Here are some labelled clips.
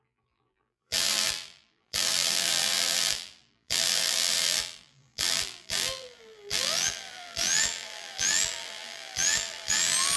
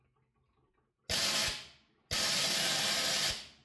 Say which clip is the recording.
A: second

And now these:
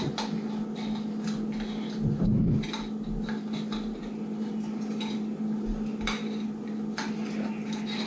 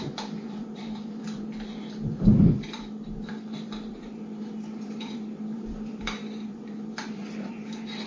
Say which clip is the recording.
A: first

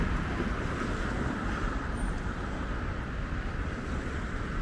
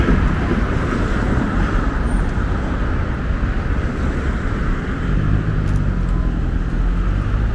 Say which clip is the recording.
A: second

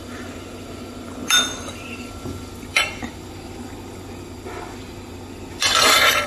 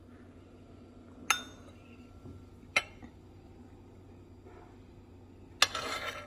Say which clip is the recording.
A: second